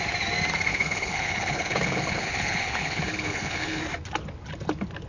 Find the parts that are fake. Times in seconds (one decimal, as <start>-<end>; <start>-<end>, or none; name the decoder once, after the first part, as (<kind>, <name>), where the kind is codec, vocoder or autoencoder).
0.7-3.8 (codec, HILCodec)